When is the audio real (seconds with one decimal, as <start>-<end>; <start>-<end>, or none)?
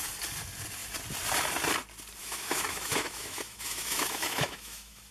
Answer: 0.0-2.2